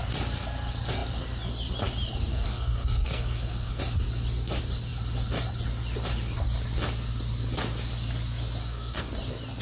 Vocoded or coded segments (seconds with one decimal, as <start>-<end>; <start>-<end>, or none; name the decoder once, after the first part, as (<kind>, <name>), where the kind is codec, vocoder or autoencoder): 2.3-3.8 (codec, SNAC); 8.6-9.1